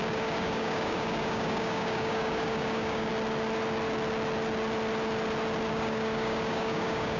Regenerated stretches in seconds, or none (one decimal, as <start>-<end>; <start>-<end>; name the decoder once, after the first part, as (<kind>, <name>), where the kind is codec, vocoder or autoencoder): 0.0-3.1 (codec, DAC); 5.7-7.2